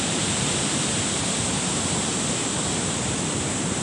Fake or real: fake